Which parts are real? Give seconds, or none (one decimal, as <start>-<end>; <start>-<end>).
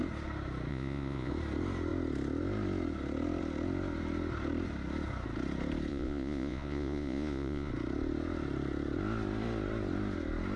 0.0-0.7; 1.3-5.9; 7.7-10.6